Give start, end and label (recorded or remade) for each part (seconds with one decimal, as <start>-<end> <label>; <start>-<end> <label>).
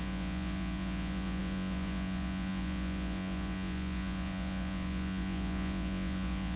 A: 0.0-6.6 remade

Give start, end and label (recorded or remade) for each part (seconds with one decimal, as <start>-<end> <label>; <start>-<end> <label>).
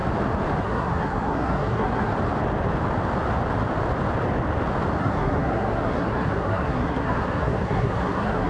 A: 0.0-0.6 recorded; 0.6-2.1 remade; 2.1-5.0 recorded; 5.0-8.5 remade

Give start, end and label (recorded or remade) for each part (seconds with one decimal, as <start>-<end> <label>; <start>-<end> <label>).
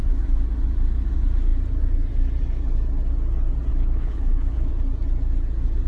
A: 0.0-3.7 recorded; 3.7-4.7 remade; 4.7-5.9 recorded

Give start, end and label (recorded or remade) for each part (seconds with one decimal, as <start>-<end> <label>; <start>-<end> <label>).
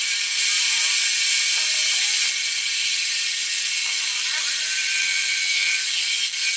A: 0.0-5.1 recorded; 5.1-5.7 remade; 5.7-6.6 recorded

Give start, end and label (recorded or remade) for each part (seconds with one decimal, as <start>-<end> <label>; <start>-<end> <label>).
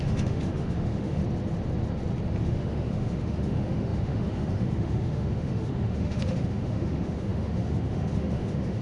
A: 0.0-1.2 remade; 1.2-2.4 recorded; 2.4-8.8 remade